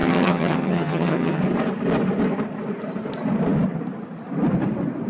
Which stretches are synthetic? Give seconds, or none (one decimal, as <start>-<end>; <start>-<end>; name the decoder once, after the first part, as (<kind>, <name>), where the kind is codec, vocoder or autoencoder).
0.0-1.4 (vocoder, HiFi-GAN)